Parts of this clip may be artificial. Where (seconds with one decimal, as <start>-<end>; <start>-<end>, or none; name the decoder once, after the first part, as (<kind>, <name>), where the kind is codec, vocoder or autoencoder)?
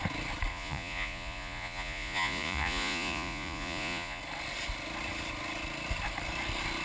0.5-4.2 (vocoder, Vocos)